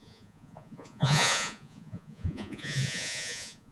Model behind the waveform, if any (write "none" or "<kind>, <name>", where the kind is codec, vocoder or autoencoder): vocoder, Vocos